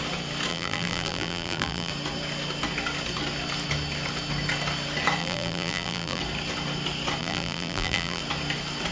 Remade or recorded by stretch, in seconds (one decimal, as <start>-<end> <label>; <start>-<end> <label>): 0.0-0.5 recorded; 0.5-1.9 remade; 1.9-5.2 recorded; 5.2-6.2 remade; 6.2-7.2 recorded; 7.2-8.2 remade; 8.2-8.9 recorded